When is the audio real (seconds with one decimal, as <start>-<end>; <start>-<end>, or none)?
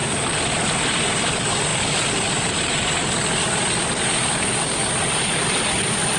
0.0-6.2